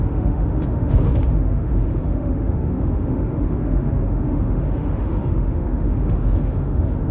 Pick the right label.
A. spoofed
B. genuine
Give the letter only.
A